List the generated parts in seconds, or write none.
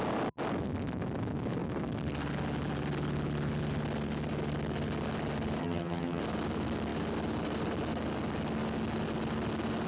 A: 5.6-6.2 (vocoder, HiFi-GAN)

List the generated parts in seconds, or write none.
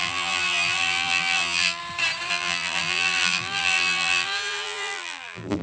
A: 0.0-1.8 (vocoder, BigVGAN v2); 2.3-5.6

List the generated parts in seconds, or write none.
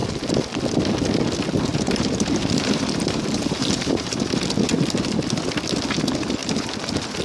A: 1.7-4.2 (vocoder, BigVGAN v2)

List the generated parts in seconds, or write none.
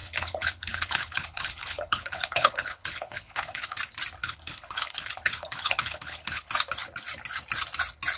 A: 0.0-3.8 (codec, HILCodec); 4.2-6.5